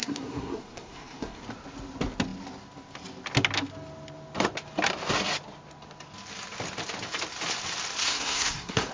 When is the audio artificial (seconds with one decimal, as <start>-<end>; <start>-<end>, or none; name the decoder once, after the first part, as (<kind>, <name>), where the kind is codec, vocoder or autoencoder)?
0.0-1.4 (codec, SNAC); 8.0-8.9